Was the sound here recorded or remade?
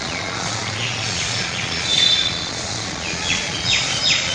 remade